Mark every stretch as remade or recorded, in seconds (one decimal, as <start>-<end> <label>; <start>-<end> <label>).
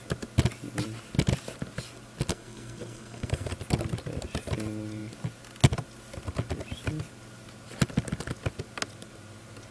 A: 0.0-2.3 recorded; 2.3-3.5 remade; 3.5-9.7 recorded